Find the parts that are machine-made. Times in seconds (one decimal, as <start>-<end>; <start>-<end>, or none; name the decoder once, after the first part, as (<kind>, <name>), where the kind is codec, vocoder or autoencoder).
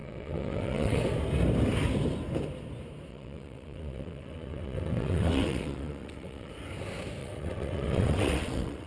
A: 0.0-1.0 (vocoder, WaveNeXt); 3.1-6.5; 7.2-8.9